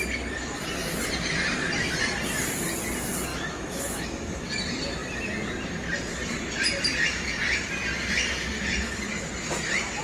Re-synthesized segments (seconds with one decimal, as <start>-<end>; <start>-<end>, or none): 3.3-4.5